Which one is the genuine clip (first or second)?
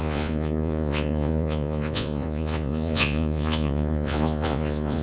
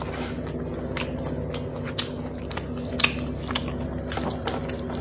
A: second